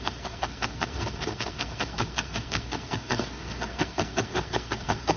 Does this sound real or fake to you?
fake